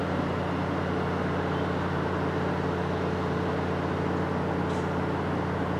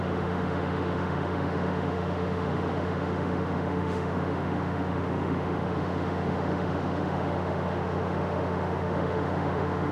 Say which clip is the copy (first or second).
second